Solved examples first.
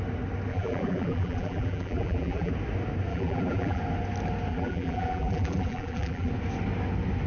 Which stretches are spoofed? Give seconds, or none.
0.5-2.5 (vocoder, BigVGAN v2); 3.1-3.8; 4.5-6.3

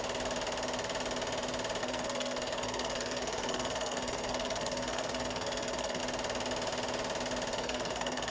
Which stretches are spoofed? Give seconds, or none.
1.8-6.0 (codec, SNAC); 7.5-8.3

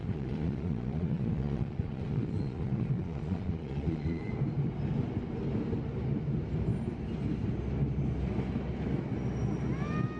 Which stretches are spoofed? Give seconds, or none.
0.0-4.3 (vocoder, Vocos)

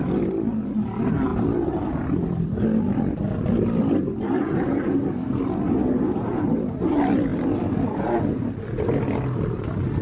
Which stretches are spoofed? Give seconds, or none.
none

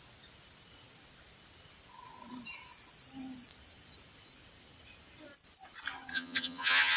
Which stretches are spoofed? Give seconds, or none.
6.1-7.0 (vocoder, HiFi-GAN)

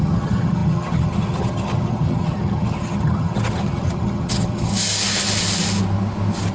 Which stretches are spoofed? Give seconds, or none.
0.0-4.7 (vocoder, HiFi-GAN)

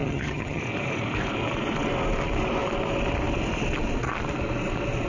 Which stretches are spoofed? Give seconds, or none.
0.0-0.6 (vocoder, HiFi-GAN)